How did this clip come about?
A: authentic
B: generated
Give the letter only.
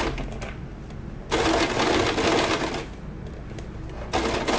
A